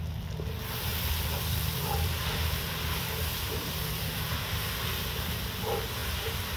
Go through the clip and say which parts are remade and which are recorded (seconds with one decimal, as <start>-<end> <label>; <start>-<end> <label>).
0.0-0.9 recorded; 0.9-4.5 remade; 4.5-6.0 recorded; 6.0-6.6 remade

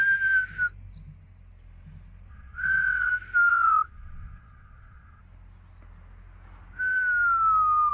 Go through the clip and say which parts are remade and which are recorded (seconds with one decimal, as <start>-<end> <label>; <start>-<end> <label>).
0.0-2.3 recorded; 2.3-3.1 remade; 3.1-3.5 recorded; 3.5-5.2 remade; 5.2-7.9 recorded

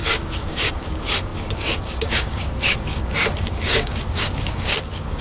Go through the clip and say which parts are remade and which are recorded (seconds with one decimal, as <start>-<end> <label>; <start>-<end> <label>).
0.0-5.2 remade